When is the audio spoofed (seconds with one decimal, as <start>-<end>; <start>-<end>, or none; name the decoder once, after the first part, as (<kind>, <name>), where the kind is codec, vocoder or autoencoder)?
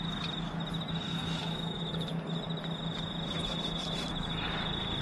1.1-1.8 (autoencoder, DAC-VAE)